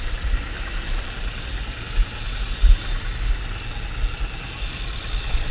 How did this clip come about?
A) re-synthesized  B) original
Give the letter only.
B